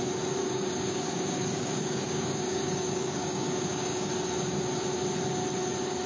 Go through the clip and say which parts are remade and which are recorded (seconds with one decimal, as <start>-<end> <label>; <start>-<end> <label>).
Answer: 0.0-0.4 recorded; 0.4-4.1 remade; 4.1-6.1 recorded